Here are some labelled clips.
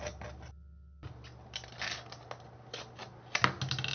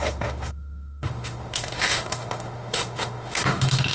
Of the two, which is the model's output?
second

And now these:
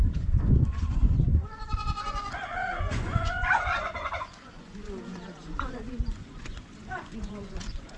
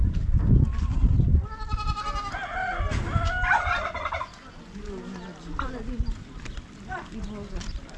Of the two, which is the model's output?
first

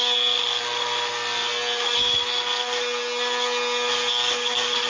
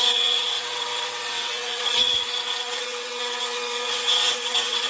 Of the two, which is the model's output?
second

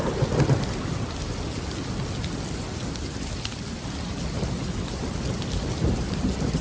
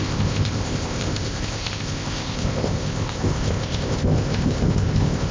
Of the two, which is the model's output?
second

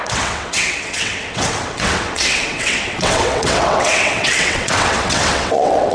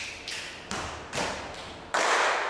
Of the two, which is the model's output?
first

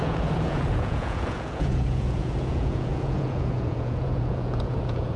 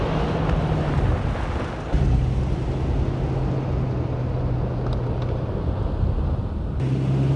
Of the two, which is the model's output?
first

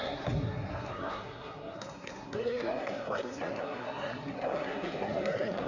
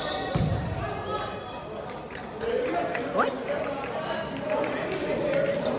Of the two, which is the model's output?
first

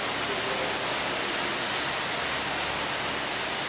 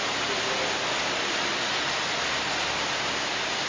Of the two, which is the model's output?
second